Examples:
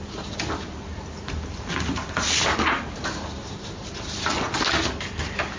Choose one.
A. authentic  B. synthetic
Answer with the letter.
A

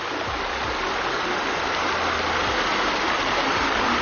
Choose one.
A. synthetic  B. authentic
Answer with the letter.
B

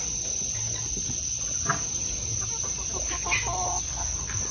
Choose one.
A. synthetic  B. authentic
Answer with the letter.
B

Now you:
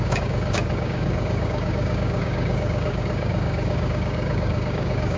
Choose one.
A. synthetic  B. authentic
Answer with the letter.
A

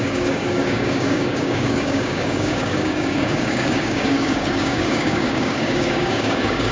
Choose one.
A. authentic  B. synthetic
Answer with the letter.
B